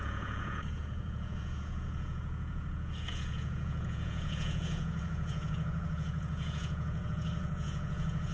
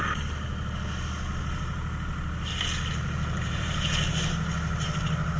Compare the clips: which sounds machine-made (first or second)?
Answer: first